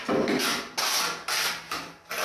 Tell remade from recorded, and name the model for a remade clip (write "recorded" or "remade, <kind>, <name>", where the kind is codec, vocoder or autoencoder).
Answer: recorded